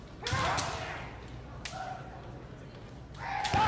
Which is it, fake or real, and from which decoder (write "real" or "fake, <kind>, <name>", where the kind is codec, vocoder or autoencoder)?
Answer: real